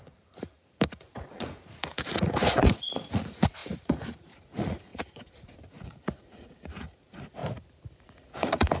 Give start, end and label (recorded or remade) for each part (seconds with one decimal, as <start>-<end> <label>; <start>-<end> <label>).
0.0-7.4 remade; 7.4-8.0 recorded; 8.0-8.8 remade